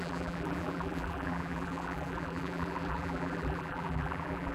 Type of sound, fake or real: fake